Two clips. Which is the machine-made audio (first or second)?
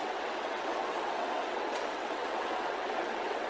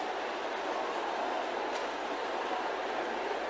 first